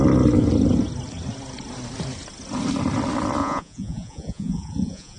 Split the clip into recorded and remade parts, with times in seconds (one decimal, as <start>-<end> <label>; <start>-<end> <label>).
0.0-3.4 recorded; 3.4-5.2 remade

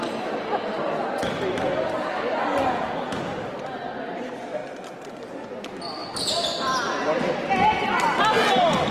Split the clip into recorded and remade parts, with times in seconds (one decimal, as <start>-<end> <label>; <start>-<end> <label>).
0.0-2.6 recorded; 2.6-3.2 remade; 3.2-8.9 recorded

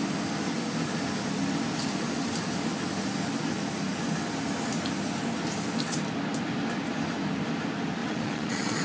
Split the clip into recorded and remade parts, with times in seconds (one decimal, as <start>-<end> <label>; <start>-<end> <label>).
0.0-8.0 recorded; 8.0-8.8 remade